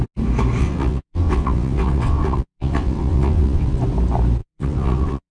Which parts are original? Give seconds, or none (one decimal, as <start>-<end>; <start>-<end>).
0.0-0.6; 3.8-4.4